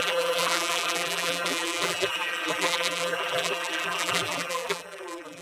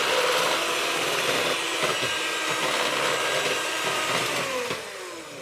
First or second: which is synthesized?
first